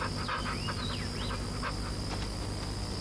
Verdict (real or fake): real